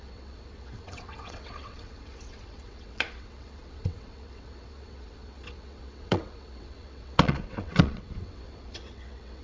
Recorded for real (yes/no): no